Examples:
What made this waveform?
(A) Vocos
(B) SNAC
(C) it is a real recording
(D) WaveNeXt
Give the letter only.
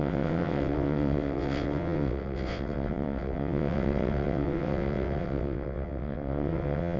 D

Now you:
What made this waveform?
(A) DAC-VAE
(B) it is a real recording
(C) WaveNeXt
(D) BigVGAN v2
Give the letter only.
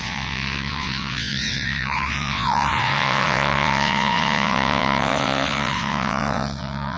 C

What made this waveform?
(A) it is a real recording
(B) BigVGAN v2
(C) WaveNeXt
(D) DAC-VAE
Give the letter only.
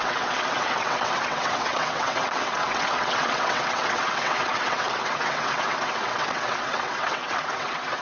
C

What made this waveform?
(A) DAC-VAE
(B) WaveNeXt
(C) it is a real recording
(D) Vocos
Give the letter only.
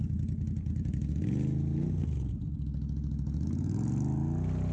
C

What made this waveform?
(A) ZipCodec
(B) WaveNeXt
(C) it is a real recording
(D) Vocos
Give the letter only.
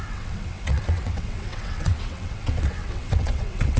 B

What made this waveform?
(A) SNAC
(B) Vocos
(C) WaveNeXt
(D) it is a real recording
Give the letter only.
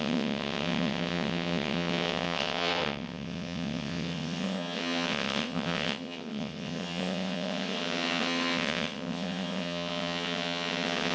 C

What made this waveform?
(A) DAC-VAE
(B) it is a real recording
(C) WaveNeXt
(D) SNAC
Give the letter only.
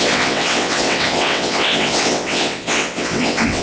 C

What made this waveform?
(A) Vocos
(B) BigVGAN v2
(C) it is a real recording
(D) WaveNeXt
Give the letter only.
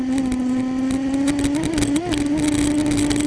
C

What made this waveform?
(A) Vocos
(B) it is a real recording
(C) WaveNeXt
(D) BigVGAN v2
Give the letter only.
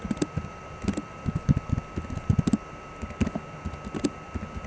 B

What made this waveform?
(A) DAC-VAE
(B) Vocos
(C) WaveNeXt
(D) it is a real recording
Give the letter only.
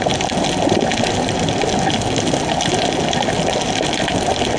D